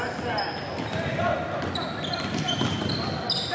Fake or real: real